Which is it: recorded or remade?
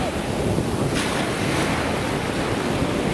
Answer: recorded